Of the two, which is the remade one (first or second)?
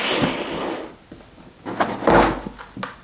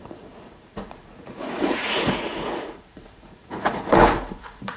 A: second